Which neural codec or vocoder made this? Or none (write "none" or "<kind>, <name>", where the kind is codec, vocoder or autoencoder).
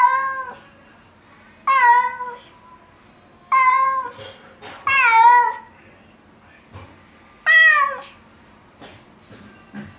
none